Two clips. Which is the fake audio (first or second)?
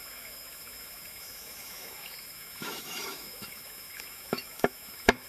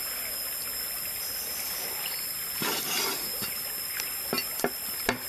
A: first